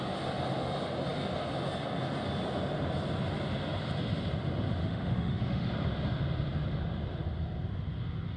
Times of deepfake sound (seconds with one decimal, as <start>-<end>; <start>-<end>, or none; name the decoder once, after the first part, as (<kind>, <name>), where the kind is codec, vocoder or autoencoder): 4.8-5.7 (autoencoder, DAC-VAE)